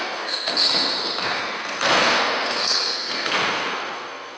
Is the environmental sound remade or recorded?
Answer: remade